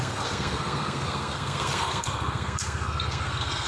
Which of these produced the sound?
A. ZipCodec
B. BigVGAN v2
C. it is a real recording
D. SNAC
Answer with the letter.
D